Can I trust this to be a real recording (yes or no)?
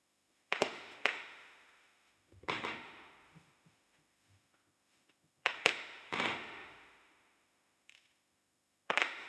no